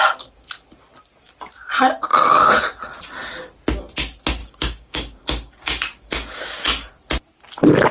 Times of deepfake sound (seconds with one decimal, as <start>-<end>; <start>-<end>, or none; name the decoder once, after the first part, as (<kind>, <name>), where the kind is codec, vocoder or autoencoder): 4.4-6.9 (codec, DAC)